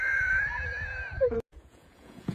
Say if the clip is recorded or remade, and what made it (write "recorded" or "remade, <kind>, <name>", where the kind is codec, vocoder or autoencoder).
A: remade, vocoder, Vocos